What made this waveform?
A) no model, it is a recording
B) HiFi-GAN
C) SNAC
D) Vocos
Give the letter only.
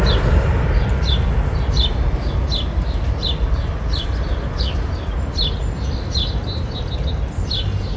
A